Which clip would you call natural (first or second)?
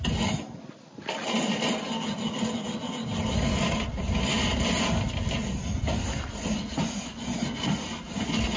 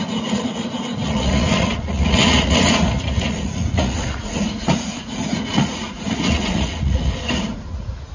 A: first